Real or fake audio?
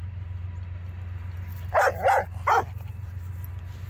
real